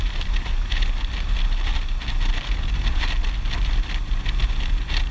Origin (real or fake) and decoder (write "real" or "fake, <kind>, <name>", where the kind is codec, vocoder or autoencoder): real